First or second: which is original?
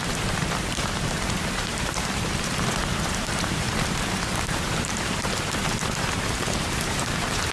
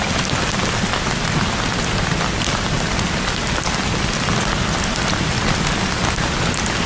second